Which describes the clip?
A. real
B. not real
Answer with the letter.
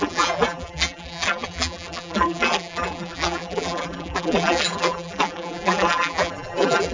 B